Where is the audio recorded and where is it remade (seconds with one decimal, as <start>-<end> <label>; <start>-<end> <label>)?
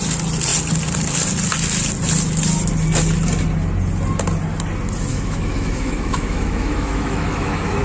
0.0-5.1 recorded; 5.1-7.8 remade